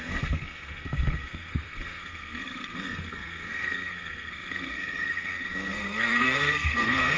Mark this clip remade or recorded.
remade